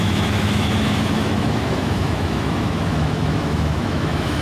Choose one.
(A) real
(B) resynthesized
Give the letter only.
B